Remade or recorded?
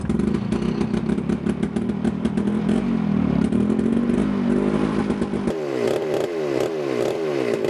recorded